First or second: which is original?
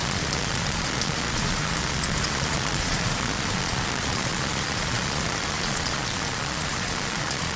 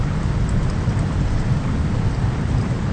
second